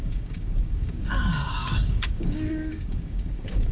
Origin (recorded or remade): remade